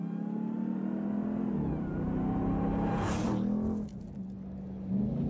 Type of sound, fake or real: real